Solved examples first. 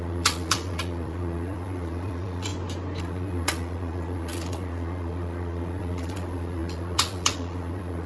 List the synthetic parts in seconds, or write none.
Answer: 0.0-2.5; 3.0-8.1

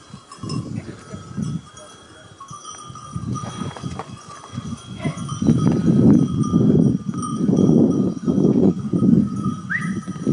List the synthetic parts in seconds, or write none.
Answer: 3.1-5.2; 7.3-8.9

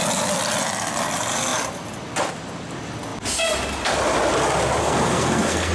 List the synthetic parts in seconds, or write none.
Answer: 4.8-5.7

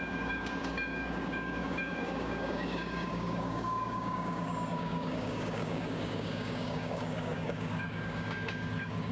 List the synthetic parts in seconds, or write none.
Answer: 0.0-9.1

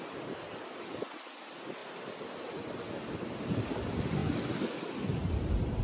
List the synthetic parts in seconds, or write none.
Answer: none